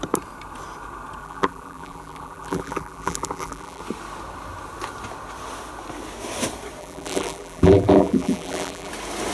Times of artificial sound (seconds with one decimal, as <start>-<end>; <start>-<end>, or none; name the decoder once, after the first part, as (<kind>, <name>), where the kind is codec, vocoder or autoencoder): 1.2-3.8 (vocoder, BigVGAN v2); 6.8-8.9